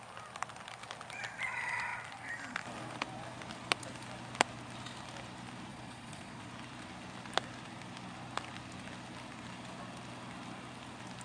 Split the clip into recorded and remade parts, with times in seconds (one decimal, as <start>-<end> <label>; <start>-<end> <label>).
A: 0.0-5.7 recorded; 5.7-6.5 remade; 6.5-11.2 recorded